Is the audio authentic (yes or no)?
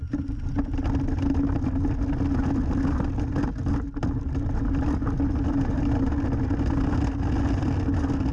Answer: yes